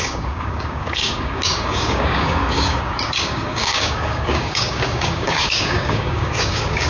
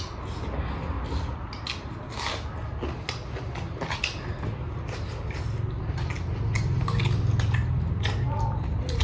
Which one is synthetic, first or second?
first